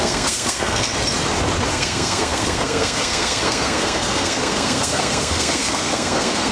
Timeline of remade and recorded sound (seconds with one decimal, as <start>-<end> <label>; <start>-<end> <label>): 0.0-0.9 remade; 0.9-1.7 recorded; 1.7-6.5 remade